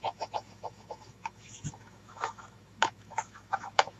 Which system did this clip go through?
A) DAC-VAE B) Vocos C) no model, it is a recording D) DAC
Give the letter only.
A